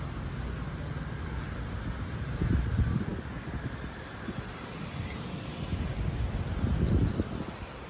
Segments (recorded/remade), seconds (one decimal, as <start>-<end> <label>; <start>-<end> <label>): 0.0-7.9 recorded